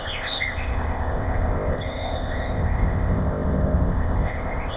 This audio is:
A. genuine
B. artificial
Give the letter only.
B